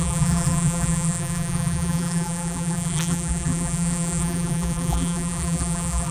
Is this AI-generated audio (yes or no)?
yes